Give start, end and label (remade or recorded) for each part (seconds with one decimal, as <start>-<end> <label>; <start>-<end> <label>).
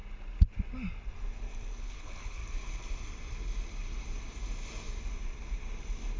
0.0-1.8 recorded; 1.8-2.4 remade; 2.4-6.2 recorded